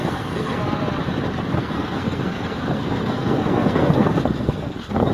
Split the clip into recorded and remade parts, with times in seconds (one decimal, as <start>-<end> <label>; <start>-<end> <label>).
0.0-0.6 remade; 0.6-1.6 recorded; 1.6-5.1 remade